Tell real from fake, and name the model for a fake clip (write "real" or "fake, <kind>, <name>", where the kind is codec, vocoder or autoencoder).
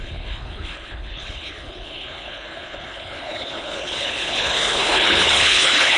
fake, codec, HILCodec